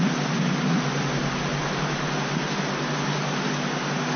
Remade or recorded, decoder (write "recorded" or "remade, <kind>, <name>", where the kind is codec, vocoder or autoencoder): recorded